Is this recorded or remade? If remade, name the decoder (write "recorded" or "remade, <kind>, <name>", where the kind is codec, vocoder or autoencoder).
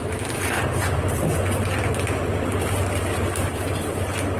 recorded